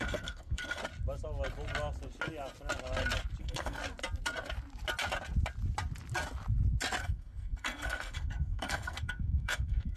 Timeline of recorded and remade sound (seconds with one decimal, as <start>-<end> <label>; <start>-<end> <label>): 0.0-0.8 remade; 0.8-3.4 recorded; 3.4-3.8 remade; 3.8-7.0 recorded; 7.0-10.0 remade